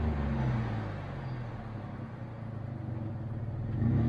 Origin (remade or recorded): recorded